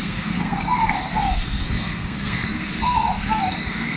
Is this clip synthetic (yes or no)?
yes